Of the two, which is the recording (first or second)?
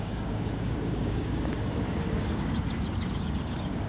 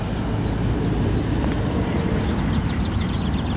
second